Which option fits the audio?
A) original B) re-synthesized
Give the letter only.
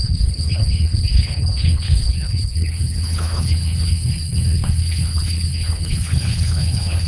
B